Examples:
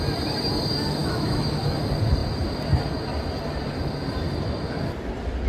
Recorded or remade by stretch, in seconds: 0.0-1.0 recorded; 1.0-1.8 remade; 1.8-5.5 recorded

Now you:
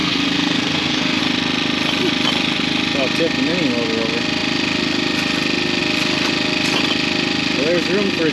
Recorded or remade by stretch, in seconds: 0.0-1.2 remade; 1.2-8.3 recorded